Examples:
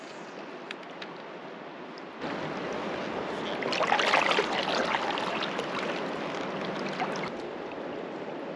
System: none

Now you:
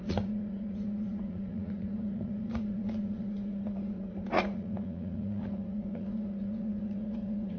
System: vocoder, Vocos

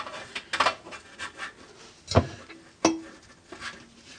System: none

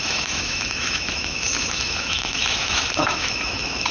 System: autoencoder, DAC-VAE